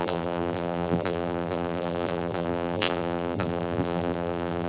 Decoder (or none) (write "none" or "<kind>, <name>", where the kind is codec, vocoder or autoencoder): vocoder, BigVGAN v2